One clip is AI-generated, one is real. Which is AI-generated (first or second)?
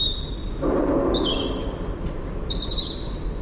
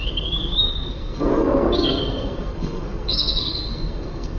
second